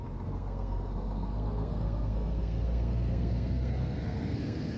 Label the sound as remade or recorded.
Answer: remade